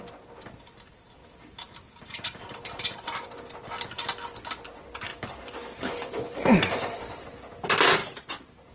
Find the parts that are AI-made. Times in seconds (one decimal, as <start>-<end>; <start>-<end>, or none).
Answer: 1.2-2.8; 5.1-7.0; 8.0-8.7